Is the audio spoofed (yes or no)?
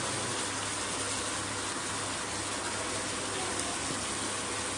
no